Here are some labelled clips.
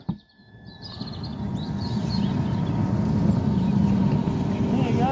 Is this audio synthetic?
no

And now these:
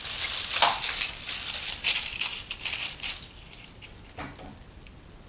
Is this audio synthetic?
yes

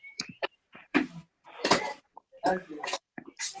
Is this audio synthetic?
yes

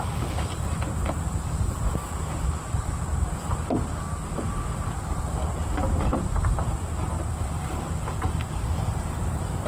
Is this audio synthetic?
no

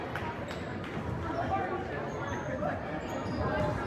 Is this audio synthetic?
no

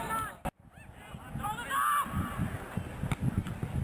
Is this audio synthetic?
no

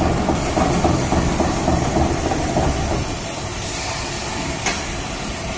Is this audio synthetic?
no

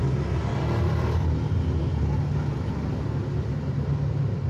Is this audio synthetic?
no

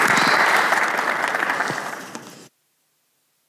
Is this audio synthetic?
no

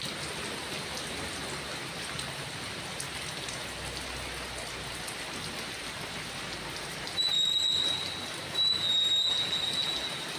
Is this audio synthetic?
no